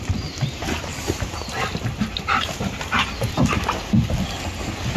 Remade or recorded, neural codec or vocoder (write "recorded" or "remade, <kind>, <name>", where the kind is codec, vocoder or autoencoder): remade, vocoder, BigVGAN v2